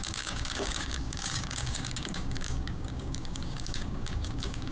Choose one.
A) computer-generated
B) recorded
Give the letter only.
A